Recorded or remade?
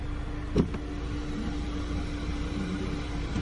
recorded